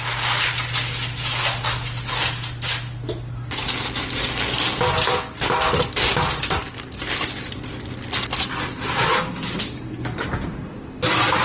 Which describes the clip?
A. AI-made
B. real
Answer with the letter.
B